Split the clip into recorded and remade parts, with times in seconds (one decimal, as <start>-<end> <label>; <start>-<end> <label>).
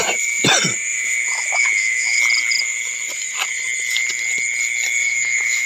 0.0-0.9 recorded; 0.9-2.2 remade; 2.2-5.0 recorded; 5.0-5.7 remade